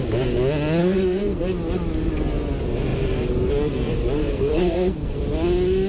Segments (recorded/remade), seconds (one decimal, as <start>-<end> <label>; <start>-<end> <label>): 0.0-0.8 recorded; 0.8-1.4 remade; 1.4-4.2 recorded; 4.2-5.2 remade; 5.2-5.9 recorded